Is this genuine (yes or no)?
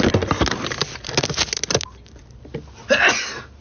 yes